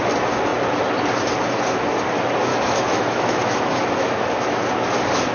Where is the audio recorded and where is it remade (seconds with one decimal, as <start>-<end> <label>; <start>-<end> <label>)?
0.0-2.5 recorded; 2.5-4.6 remade; 4.6-5.3 recorded